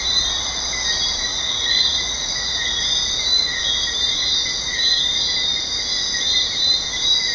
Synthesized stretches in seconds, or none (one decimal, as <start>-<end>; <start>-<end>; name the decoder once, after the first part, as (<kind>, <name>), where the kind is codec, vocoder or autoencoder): 1.3-2.8 (vocoder, Vocos)